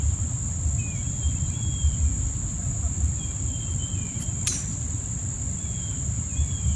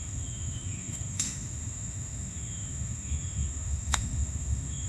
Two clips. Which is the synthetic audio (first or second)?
second